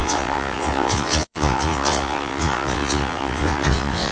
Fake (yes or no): yes